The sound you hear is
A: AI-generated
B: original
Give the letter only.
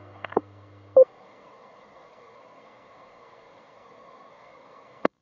A